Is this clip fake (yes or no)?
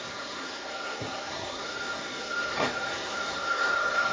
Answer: yes